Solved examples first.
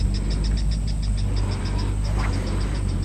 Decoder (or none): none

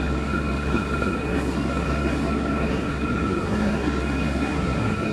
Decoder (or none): codec, SNAC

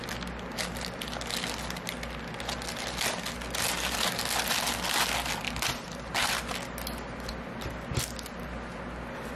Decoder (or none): none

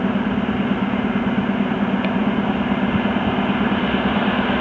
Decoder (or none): none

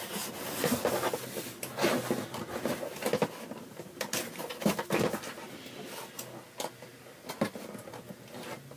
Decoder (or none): none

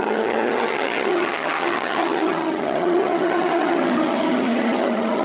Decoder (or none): vocoder, HiFi-GAN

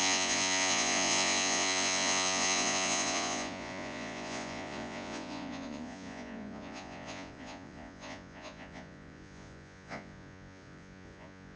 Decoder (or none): vocoder, Vocos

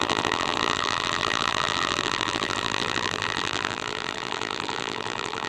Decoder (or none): vocoder, BigVGAN v2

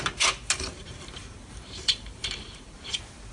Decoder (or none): vocoder, BigVGAN v2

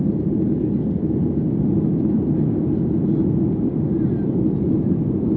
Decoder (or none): none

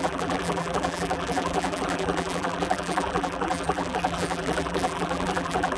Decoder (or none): vocoder, BigVGAN v2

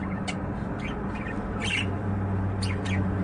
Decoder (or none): none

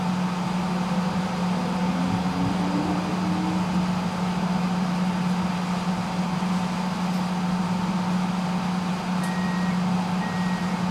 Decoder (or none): none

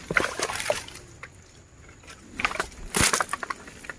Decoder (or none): none